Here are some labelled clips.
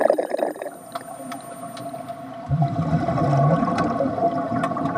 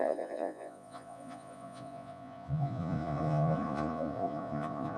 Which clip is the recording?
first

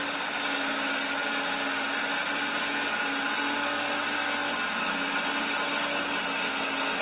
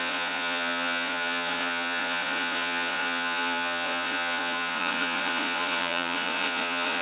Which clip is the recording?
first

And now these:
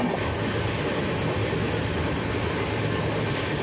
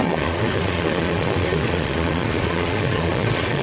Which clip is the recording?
first